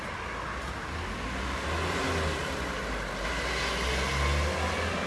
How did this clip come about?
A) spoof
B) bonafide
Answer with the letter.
B